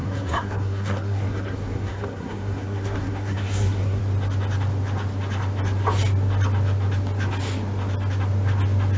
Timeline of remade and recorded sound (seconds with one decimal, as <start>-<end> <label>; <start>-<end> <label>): 0.0-4.0 remade; 4.0-9.0 recorded